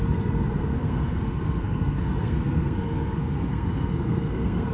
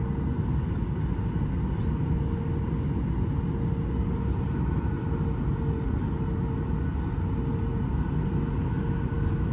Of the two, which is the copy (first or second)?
first